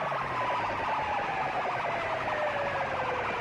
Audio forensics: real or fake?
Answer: real